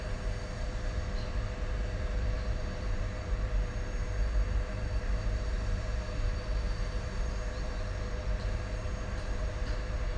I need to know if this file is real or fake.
fake